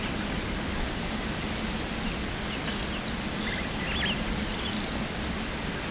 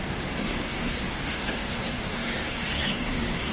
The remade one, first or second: second